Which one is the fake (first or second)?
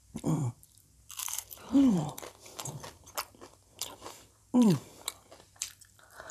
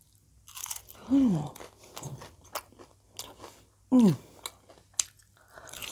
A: first